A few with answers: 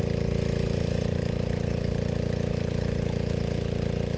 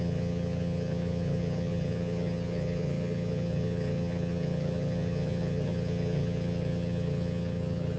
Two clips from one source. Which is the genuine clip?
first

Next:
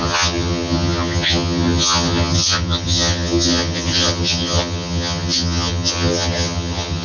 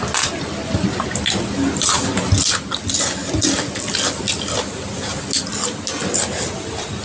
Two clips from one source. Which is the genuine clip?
second